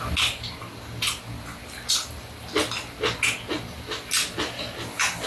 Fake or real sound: real